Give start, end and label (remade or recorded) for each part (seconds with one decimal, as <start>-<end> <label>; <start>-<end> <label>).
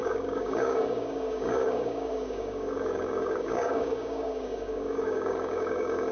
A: 0.0-6.1 remade